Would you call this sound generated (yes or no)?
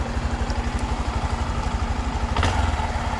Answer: no